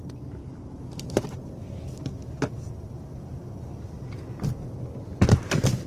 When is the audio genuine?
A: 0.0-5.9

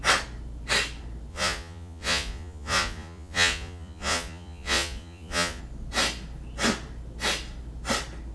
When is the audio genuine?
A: 0.0-1.3; 5.6-8.3

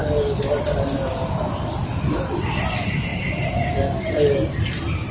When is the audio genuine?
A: 0.0-5.1

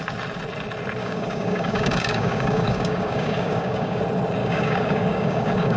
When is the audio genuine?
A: 0.0-1.0; 4.0-4.4

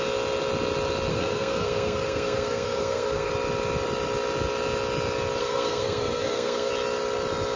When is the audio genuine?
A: 0.0-1.1; 3.3-5.4; 6.7-7.6

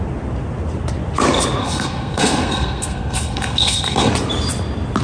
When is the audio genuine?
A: 0.0-1.6; 4.1-5.0

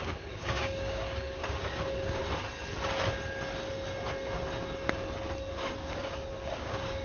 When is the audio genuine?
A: 2.2-5.5